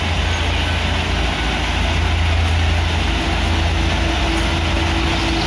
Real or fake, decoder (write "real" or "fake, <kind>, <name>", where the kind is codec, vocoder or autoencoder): real